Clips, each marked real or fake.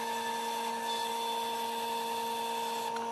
real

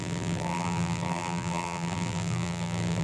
fake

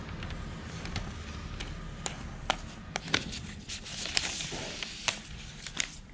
fake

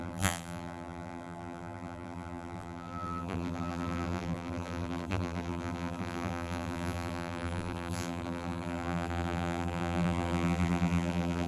fake